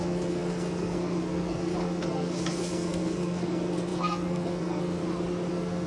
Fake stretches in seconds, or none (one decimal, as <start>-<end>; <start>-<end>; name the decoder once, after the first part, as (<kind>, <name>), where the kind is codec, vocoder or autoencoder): 0.0-5.0 (codec, SNAC); 5.5-5.9